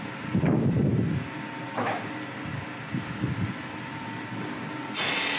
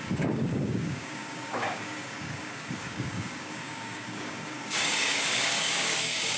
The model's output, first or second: second